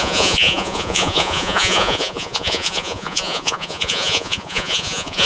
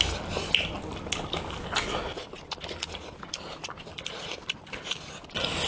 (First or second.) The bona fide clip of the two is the second